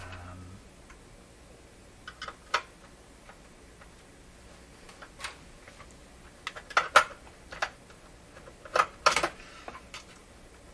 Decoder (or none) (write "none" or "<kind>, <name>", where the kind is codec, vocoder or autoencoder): none